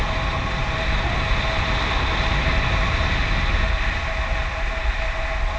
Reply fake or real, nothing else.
real